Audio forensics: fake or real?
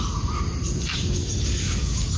real